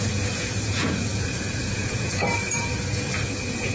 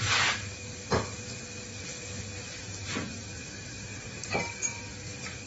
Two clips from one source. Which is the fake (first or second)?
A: first